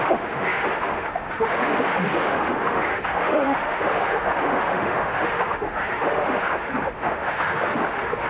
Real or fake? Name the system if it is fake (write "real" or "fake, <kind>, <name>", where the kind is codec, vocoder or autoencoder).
fake, autoencoder, DAC-VAE